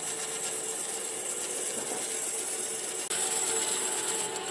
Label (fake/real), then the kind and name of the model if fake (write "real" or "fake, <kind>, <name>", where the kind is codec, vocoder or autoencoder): real